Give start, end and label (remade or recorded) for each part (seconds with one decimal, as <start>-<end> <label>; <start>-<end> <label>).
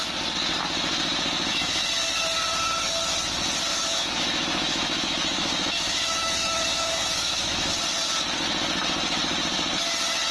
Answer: 0.0-1.5 recorded; 1.5-2.0 remade; 2.0-3.7 recorded; 3.7-7.7 remade; 7.7-10.3 recorded